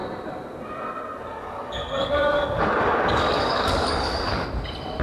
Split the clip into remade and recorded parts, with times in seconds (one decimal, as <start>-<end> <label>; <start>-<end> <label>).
0.0-1.3 recorded; 1.3-4.3 remade; 4.3-5.0 recorded